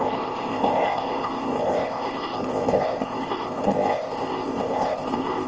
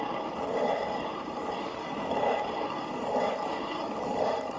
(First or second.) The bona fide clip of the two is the second